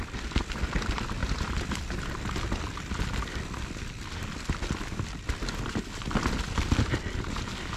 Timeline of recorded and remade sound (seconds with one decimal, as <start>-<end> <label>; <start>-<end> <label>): 0.0-7.8 recorded